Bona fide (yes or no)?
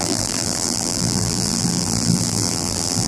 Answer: no